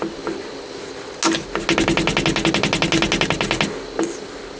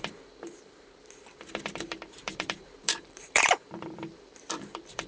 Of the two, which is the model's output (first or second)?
second